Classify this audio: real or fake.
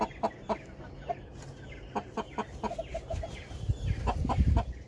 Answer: real